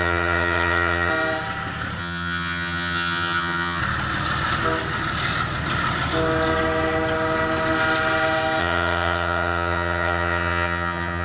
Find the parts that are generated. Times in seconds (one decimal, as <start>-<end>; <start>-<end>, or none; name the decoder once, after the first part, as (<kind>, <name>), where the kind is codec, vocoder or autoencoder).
0.0-1.1 (vocoder, HiFi-GAN); 2.0-3.8; 8.6-11.2